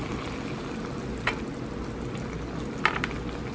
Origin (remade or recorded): recorded